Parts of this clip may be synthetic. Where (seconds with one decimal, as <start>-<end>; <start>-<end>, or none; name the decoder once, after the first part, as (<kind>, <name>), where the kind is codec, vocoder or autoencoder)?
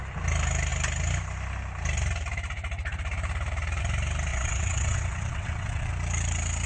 4.3-5.9 (vocoder, WaveNeXt)